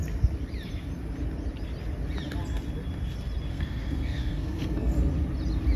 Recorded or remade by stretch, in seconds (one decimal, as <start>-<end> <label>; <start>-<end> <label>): 0.0-3.5 recorded; 3.5-4.9 remade; 4.9-5.8 recorded